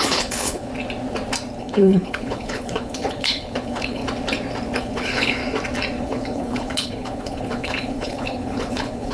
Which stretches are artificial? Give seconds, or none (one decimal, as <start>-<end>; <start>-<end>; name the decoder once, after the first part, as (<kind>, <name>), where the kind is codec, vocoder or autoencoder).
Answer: 0.0-0.7 (codec, HILCodec); 1.6-4.0; 4.8-5.4; 6.0-9.1